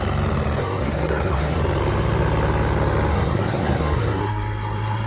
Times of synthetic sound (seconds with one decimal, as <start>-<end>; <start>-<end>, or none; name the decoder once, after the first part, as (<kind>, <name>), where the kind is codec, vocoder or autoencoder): 0.6-1.6 (codec, SNAC); 3.1-5.1

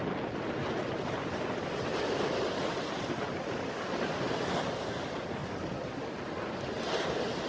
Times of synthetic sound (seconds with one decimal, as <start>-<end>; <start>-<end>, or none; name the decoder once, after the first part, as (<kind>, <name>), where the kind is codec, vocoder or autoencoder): 5.4-6.8 (vocoder, BigVGAN v2)

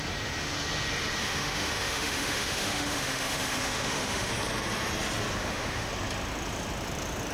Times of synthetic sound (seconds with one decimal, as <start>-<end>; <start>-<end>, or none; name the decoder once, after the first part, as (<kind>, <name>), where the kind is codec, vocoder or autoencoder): 1.2-4.3 (autoencoder, DAC-VAE); 5.4-5.9

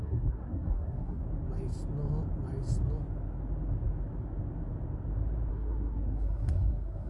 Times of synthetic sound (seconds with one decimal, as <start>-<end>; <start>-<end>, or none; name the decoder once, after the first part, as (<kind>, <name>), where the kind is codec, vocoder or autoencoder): 0.0-1.2 (codec, SNAC); 5.5-7.1

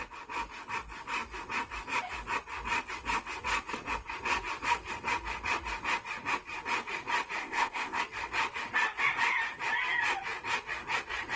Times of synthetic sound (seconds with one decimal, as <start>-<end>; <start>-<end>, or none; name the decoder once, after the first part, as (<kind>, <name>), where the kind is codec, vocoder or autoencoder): 7.4-8.0 (codec, ZipCodec)

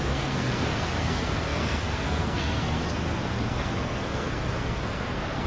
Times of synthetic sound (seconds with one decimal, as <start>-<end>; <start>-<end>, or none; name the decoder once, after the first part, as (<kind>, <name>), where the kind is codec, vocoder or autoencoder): 0.0-5.5 (codec, SNAC)

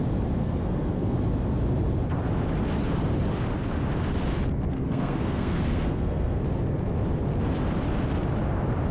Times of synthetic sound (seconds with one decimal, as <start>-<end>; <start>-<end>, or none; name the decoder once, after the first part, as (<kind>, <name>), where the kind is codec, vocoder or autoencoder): 0.4-1.2 (codec, SNAC); 4.7-6.4